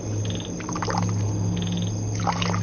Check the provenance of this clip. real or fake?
real